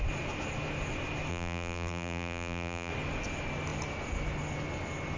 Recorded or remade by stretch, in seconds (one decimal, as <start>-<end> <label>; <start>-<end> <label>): 0.0-1.3 recorded; 1.3-2.9 remade; 2.9-5.2 recorded